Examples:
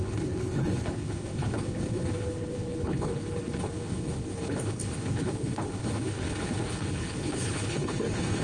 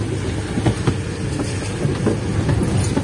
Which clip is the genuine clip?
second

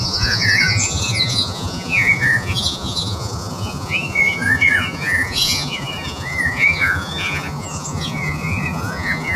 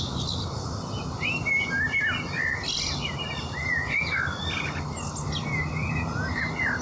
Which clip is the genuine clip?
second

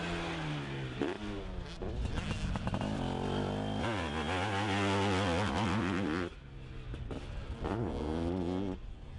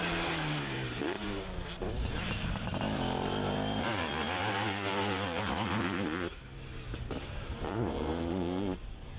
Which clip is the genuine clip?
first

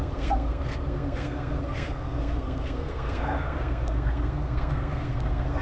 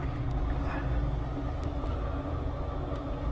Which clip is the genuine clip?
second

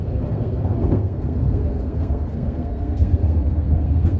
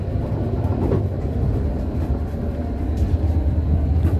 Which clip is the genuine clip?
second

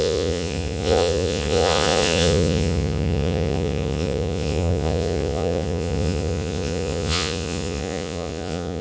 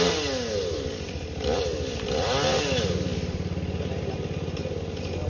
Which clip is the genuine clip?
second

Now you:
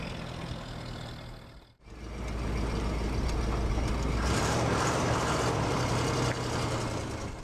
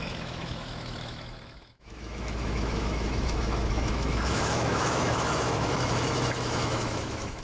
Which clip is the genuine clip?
first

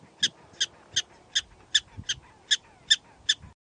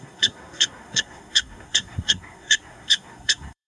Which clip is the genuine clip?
first